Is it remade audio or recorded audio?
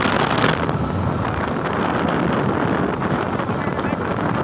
recorded